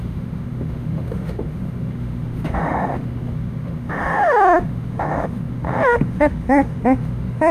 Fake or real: fake